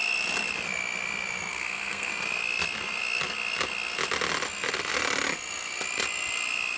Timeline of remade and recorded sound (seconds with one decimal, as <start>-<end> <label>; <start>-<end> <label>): 0.0-1.5 recorded; 1.5-2.1 remade; 2.1-6.8 recorded

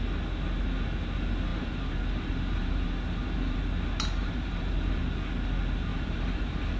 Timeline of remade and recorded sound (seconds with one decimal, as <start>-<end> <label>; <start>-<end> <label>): 0.0-1.5 recorded; 1.5-3.6 remade; 3.6-4.2 recorded; 4.2-5.0 remade; 5.0-5.9 recorded; 5.9-6.8 remade

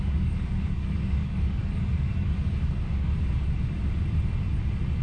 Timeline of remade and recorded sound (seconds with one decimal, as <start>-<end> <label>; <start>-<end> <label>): 0.0-3.1 remade; 3.1-5.0 recorded

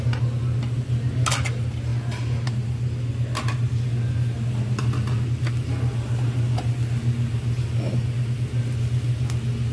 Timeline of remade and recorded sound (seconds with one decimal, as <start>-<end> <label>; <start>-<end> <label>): 0.0-9.7 recorded